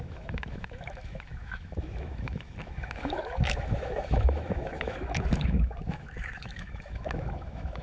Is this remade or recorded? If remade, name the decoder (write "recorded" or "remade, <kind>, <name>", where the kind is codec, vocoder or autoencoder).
remade, autoencoder, DAC-VAE